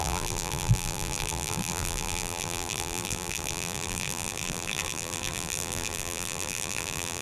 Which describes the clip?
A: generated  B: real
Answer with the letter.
A